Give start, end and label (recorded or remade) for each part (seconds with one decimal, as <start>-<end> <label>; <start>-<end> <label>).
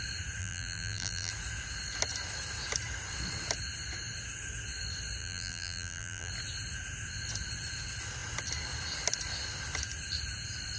0.0-0.4 recorded; 0.4-1.3 remade; 1.3-5.2 recorded; 5.2-6.3 remade; 6.3-10.8 recorded